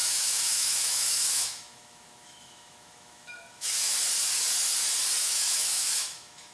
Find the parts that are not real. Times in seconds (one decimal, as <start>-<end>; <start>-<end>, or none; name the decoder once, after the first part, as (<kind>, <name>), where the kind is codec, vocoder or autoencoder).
0.0-3.9 (autoencoder, DAC-VAE); 5.2-6.5

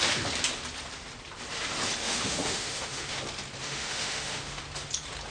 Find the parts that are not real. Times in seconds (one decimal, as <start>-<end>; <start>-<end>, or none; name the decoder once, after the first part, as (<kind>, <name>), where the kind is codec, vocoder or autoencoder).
2.0-3.2 (autoencoder, DAC-VAE); 3.6-4.6

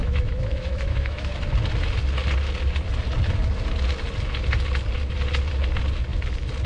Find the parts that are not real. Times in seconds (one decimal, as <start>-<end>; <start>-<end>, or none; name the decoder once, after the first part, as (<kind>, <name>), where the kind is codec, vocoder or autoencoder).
0.0-1.3 (autoencoder, DAC-VAE)

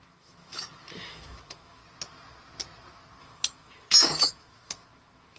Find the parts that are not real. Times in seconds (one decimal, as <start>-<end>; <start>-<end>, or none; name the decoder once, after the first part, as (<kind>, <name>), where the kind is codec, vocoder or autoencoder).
0.0-1.8 (autoencoder, DAC-VAE); 3.2-5.4